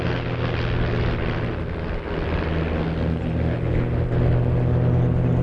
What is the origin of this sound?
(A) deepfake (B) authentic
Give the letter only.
B